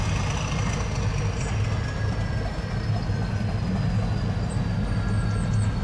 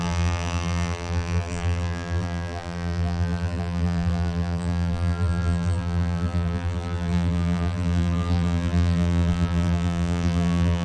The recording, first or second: first